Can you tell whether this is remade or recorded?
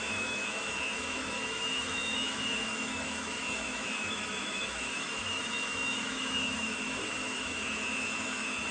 remade